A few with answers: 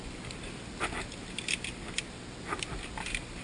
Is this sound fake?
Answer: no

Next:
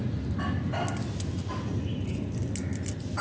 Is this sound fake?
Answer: no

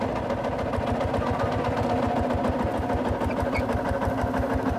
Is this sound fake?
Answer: no